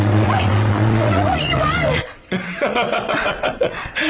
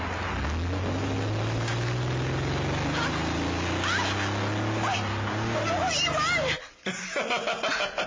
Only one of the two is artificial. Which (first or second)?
first